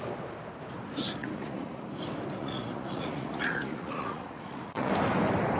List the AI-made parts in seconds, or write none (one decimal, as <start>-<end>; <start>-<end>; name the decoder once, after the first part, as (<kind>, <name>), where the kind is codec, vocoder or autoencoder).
1.2-1.9 (vocoder, Vocos); 2.4-4.9